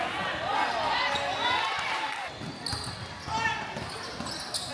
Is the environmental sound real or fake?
real